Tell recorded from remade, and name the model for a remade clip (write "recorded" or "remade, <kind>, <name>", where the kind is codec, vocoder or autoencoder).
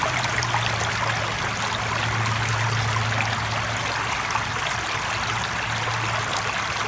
recorded